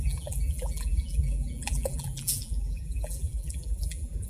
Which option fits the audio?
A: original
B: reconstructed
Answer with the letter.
B